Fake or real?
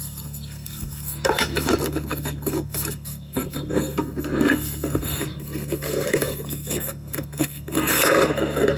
fake